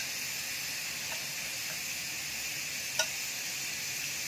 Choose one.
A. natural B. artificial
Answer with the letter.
A